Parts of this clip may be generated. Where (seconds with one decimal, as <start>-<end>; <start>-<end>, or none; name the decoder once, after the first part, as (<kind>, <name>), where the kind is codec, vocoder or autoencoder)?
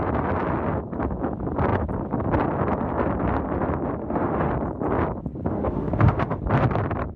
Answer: 4.0-4.5 (autoencoder, DAC-VAE); 5.5-6.4